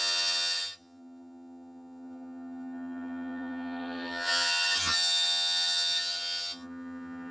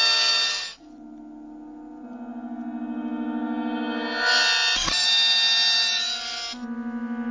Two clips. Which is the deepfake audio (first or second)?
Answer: first